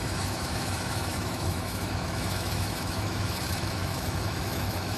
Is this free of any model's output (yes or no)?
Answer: no